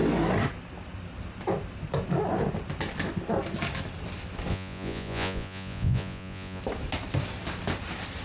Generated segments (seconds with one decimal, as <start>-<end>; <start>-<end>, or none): 4.5-6.6